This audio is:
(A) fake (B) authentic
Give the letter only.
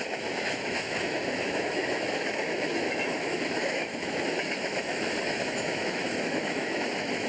A